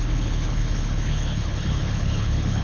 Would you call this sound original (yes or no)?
no